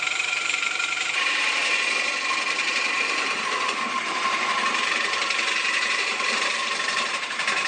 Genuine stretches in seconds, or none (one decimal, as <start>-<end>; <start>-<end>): 1.6-3.0